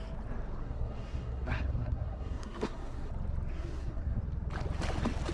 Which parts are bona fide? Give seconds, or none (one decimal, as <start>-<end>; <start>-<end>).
0.0-0.6; 3.1-3.5; 4.2-5.3